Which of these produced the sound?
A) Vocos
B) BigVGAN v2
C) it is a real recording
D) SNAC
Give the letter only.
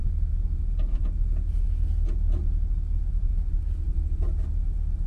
C